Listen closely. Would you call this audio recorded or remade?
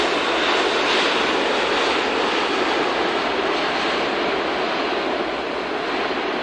recorded